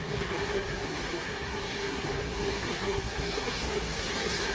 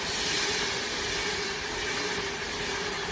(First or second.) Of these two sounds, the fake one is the first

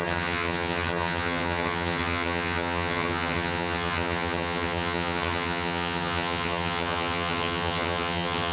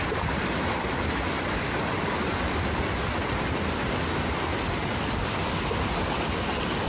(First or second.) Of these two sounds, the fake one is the first